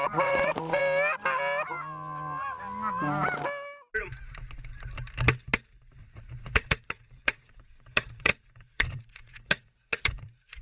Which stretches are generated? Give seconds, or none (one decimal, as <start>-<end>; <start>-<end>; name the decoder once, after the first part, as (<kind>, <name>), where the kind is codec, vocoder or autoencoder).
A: 0.0-0.8 (vocoder, Vocos); 6.0-10.6